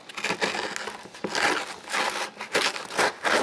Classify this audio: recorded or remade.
recorded